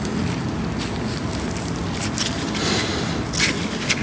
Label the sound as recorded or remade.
recorded